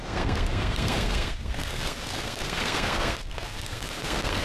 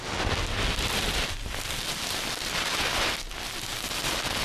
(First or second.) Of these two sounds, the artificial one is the first